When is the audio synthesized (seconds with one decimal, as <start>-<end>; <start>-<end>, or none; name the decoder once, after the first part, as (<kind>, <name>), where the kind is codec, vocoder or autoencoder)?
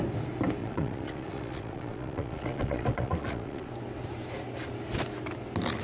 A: 0.6-3.7 (vocoder, Vocos)